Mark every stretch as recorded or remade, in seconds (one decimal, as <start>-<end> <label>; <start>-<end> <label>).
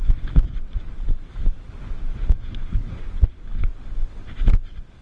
0.0-5.0 recorded